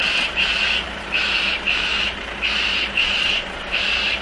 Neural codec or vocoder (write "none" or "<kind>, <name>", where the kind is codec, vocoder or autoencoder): vocoder, BigVGAN v2